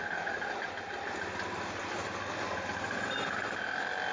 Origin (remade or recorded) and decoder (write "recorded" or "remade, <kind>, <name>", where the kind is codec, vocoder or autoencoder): recorded